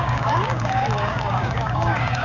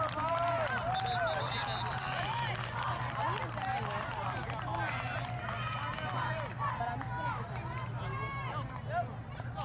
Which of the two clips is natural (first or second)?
second